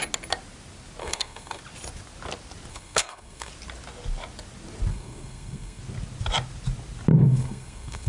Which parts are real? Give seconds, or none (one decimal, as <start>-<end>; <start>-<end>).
0.0-1.0; 1.6-2.7; 3.5-4.9; 5.8-7.1